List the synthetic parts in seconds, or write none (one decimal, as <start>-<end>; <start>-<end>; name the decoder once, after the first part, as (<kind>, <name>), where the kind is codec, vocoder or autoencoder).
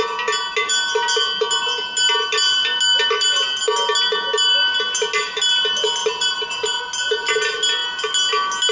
6.0-6.8 (vocoder, BigVGAN v2)